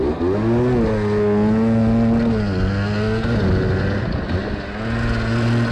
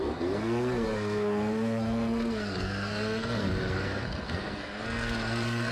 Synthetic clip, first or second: second